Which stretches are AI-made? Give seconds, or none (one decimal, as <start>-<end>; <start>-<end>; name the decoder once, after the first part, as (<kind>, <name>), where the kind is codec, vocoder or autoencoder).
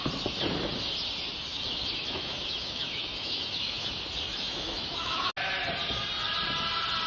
1.5-3.9 (autoencoder, DAC-VAE); 4.3-5.3